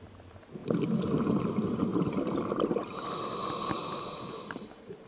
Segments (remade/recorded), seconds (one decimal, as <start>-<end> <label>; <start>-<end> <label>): 0.0-1.9 recorded; 1.9-2.5 remade; 2.5-3.8 recorded; 3.8-5.1 remade